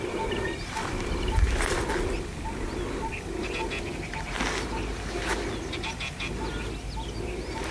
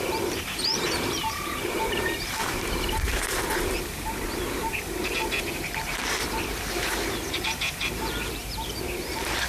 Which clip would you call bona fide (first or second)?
first